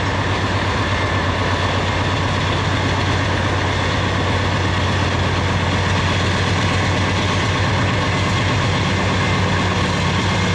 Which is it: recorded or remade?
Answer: recorded